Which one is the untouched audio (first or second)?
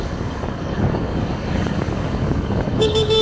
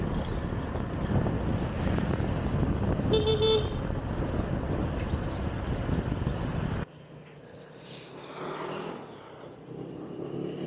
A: second